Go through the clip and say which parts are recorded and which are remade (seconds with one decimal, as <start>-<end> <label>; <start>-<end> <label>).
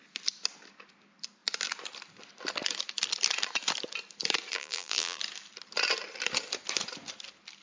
0.0-4.5 recorded; 4.5-5.2 remade; 5.2-7.6 recorded